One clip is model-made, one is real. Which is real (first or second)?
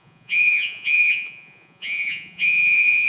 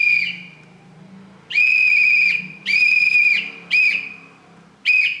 second